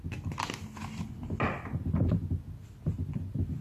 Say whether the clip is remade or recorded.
recorded